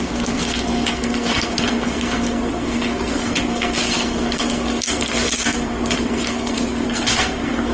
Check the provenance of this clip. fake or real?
fake